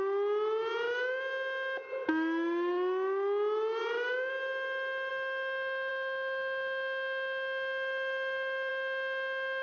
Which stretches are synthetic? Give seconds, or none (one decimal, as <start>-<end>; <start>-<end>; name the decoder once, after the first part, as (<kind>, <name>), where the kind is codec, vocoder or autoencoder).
none